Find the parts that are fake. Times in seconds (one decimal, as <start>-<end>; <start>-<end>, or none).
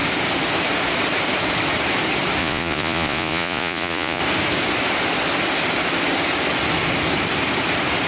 2.4-4.2